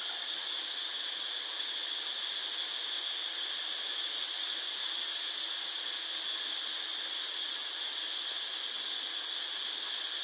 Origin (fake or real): real